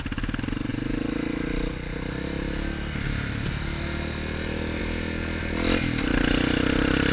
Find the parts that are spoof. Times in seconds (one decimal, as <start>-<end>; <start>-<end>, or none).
none